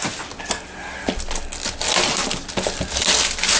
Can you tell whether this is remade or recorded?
recorded